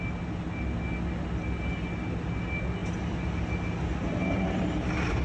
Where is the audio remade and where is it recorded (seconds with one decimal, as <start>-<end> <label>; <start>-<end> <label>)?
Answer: 0.0-5.2 recorded